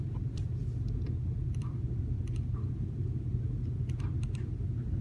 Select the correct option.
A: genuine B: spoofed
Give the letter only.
A